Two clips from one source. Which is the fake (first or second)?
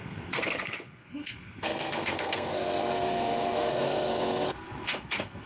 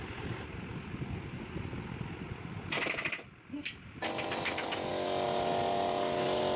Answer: first